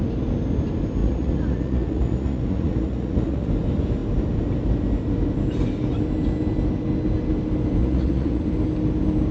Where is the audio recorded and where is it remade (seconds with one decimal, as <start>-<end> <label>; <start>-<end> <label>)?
0.0-1.0 recorded; 1.0-3.5 remade; 3.5-7.8 recorded; 7.8-8.4 remade; 8.4-9.3 recorded